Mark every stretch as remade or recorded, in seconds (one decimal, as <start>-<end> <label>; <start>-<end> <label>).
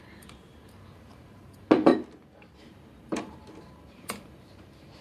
0.0-1.9 remade; 1.9-2.6 recorded; 2.6-5.0 remade